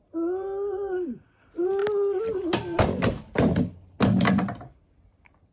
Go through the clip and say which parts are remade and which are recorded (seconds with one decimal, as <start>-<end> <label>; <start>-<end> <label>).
0.0-5.5 recorded